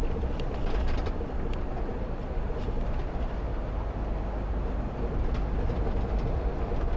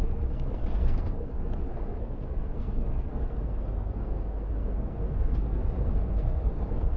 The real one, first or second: first